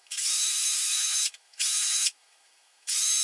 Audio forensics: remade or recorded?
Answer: remade